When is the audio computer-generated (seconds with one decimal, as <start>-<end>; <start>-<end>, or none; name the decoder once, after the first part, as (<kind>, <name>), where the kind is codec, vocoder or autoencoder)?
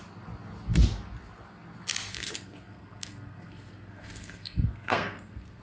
2.1-5.6 (codec, SNAC)